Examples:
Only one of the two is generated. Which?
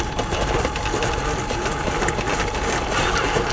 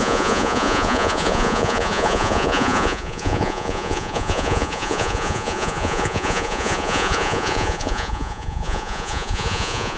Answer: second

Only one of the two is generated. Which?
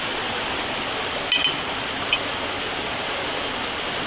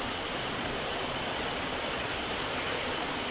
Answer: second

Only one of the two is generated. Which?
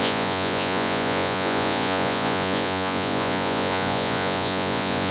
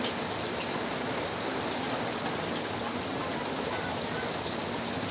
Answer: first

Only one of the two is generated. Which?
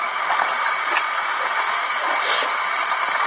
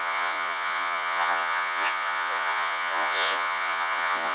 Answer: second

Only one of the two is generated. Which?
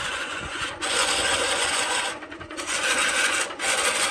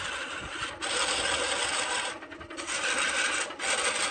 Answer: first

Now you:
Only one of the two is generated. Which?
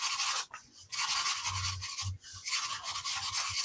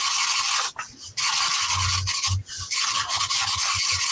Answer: first